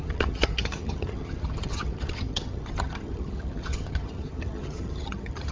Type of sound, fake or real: fake